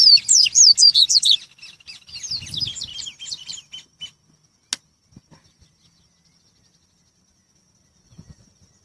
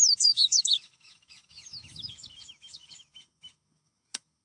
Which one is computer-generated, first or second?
second